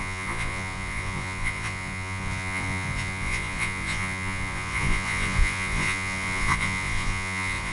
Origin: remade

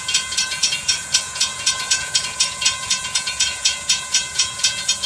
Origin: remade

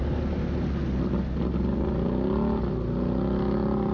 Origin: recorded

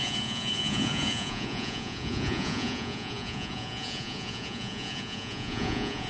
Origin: remade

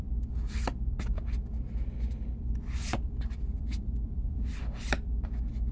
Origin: recorded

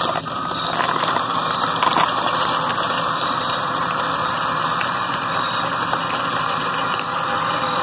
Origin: recorded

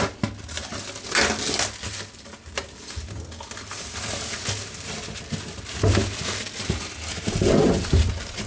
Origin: recorded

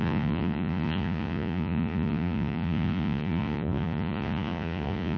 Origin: remade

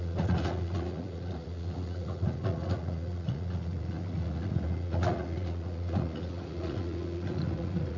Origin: remade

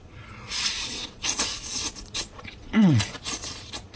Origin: remade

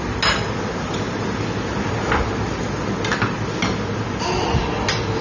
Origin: recorded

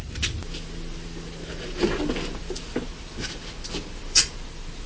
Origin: recorded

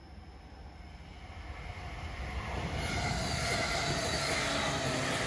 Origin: recorded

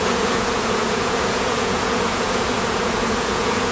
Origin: remade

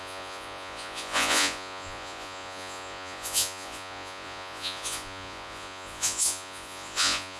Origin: remade